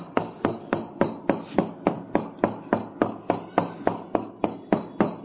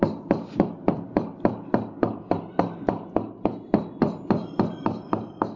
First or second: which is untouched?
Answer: first